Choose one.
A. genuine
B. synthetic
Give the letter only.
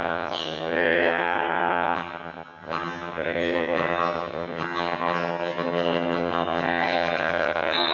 B